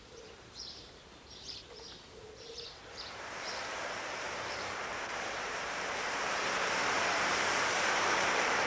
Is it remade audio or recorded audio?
remade